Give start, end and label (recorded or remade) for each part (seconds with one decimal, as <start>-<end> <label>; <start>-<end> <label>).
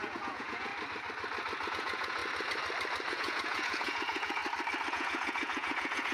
0.0-0.7 remade; 0.7-1.7 recorded; 1.7-2.2 remade; 2.2-3.1 recorded; 3.1-4.4 remade; 4.4-4.9 recorded; 4.9-6.1 remade